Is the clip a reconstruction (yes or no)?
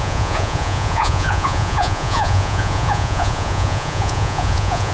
yes